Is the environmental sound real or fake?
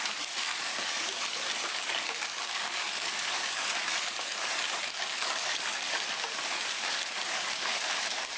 fake